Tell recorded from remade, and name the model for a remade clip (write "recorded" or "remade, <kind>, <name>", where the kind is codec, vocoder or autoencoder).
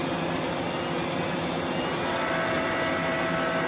recorded